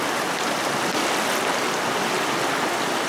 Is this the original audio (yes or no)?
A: yes